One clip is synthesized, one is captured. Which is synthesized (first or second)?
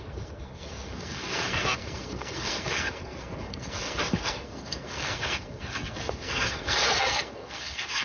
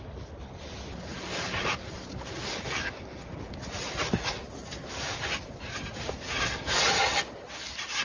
first